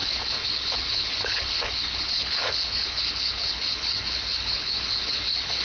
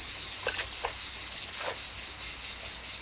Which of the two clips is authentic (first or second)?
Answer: second